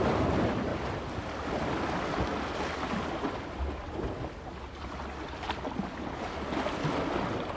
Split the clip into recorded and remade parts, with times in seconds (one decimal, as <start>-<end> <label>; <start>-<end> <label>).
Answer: 0.0-7.6 recorded